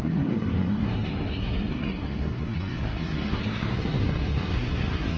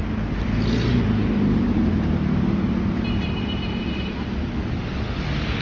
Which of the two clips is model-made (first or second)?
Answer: first